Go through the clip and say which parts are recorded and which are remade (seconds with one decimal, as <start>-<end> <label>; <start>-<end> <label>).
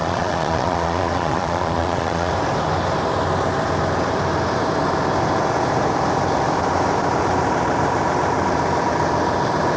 0.0-2.3 remade; 2.3-9.8 recorded